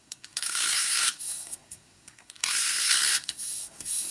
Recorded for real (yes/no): no